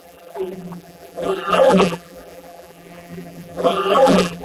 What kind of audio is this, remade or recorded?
remade